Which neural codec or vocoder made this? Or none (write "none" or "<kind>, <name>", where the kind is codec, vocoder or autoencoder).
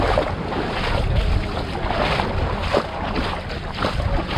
none